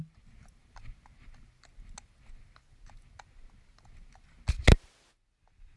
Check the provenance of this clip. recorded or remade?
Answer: recorded